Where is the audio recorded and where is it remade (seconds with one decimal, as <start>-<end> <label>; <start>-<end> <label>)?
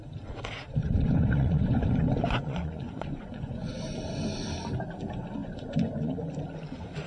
0.0-0.8 recorded; 0.8-3.7 remade; 3.7-5.4 recorded; 5.4-6.3 remade; 6.3-7.1 recorded